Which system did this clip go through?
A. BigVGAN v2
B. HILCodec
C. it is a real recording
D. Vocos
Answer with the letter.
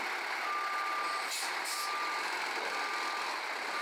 C